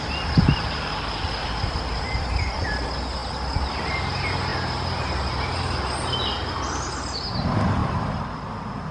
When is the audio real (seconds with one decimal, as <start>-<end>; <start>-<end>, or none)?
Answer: 0.0-7.8; 8.5-8.9